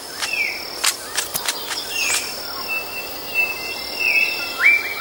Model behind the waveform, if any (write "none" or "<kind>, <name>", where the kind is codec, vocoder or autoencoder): none